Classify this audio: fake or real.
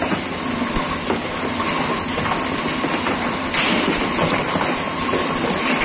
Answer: real